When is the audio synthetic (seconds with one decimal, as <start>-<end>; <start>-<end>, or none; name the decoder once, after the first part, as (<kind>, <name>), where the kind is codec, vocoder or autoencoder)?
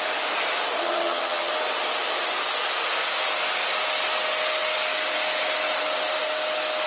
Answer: 0.8-1.5 (vocoder, HiFi-GAN)